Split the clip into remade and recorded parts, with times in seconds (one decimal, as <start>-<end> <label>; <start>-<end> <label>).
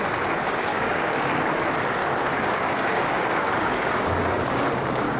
0.0-0.7 recorded; 0.7-1.3 remade; 1.3-2.0 recorded; 2.0-5.2 remade